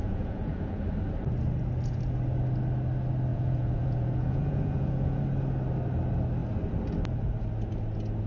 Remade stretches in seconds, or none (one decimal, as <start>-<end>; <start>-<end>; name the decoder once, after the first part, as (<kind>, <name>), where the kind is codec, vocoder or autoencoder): 0.0-0.8 (vocoder, Vocos); 3.3-5.2